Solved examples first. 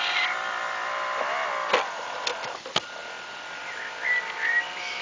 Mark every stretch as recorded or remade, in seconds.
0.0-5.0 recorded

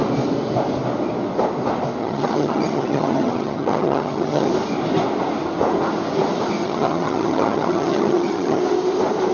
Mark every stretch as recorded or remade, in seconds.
0.0-2.0 recorded; 2.0-4.5 remade; 4.5-6.6 recorded; 6.6-8.6 remade; 8.6-9.3 recorded

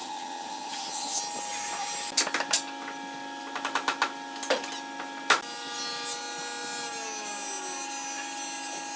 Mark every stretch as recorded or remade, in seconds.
0.0-1.2 remade; 1.2-9.0 recorded